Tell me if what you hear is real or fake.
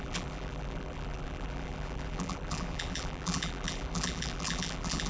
fake